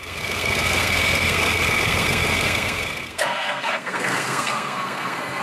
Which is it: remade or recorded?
remade